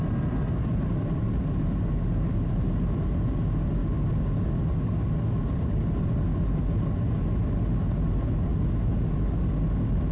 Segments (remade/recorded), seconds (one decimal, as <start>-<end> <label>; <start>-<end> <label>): 0.0-10.1 recorded